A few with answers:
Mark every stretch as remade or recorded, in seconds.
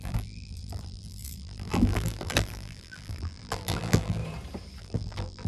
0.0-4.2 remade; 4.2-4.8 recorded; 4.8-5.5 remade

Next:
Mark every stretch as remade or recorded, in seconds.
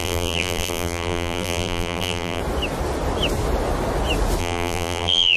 0.0-2.4 remade; 2.4-4.4 recorded; 4.4-5.4 remade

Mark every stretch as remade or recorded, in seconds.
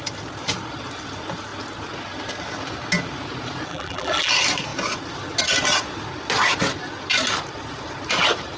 0.0-3.7 recorded; 3.7-4.3 remade; 4.3-8.6 recorded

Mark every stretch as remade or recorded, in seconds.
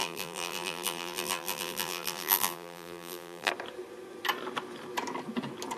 0.0-3.5 remade; 3.5-5.8 recorded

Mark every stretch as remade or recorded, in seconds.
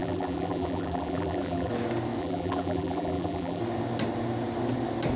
0.0-1.7 remade; 1.7-2.2 recorded; 2.2-3.6 remade; 3.6-5.2 recorded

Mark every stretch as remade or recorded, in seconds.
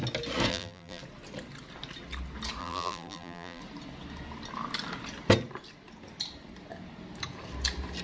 0.0-0.5 recorded; 0.5-1.0 remade; 1.0-2.6 recorded; 2.6-3.6 remade; 3.6-8.0 recorded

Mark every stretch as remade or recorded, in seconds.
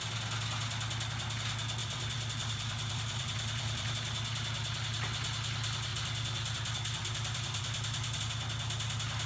0.0-1.8 recorded; 1.8-3.9 remade; 3.9-5.9 recorded; 5.9-8.2 remade; 8.2-9.3 recorded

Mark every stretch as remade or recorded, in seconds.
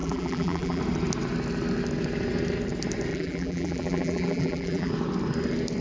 0.0-0.8 remade; 0.8-3.1 recorded; 3.1-4.9 remade; 4.9-5.8 recorded